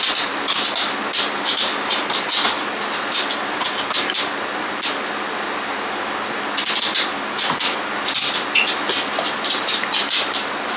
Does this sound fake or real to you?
real